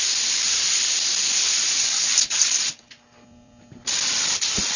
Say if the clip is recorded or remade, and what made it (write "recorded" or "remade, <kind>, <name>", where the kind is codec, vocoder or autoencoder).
recorded